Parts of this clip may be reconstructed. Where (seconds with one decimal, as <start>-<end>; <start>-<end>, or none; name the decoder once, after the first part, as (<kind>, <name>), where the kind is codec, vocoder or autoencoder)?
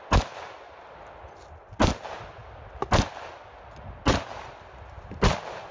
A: none